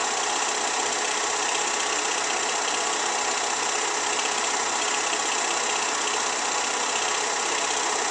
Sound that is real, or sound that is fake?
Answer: real